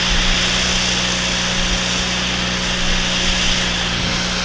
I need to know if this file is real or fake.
real